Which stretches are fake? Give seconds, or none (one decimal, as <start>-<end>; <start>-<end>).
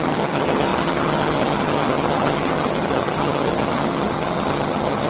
0.0-5.1